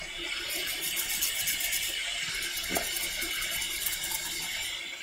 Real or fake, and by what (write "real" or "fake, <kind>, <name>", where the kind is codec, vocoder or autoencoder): real